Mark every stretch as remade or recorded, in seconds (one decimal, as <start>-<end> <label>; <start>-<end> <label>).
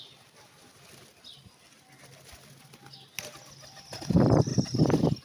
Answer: 0.0-5.2 recorded